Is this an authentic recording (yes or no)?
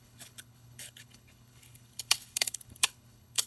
no